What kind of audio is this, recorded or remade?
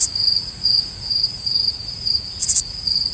remade